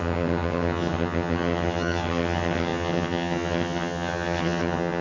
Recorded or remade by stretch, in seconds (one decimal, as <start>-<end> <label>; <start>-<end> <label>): 0.0-5.0 remade